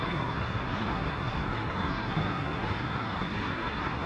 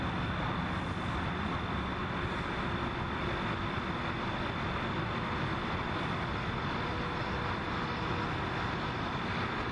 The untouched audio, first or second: second